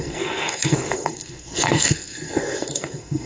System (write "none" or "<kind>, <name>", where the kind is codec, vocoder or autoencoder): codec, SNAC